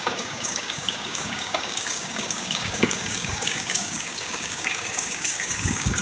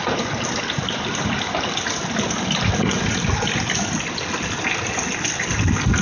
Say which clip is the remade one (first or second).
first